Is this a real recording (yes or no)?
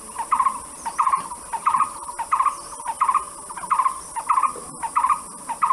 no